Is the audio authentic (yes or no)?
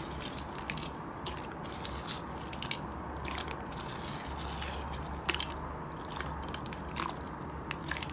yes